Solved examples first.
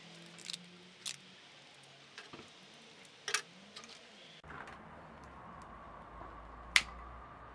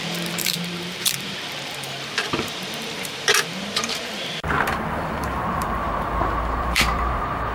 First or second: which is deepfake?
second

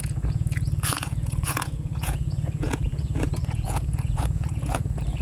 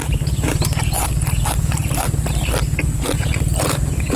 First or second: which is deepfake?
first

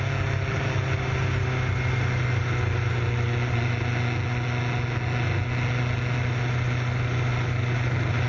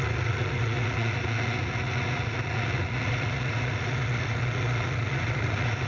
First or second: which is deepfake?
second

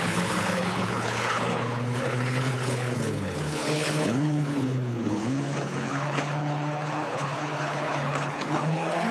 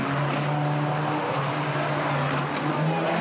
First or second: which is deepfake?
first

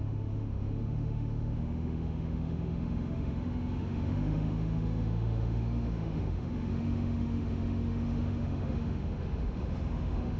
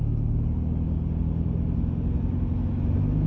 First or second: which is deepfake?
first